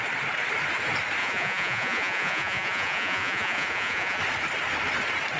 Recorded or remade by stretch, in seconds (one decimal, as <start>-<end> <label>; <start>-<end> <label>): 0.0-1.2 recorded; 1.2-4.2 remade; 4.2-5.4 recorded